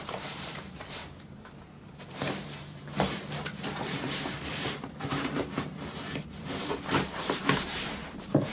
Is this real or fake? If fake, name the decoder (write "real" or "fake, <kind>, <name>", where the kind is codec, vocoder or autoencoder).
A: fake, vocoder, BigVGAN v2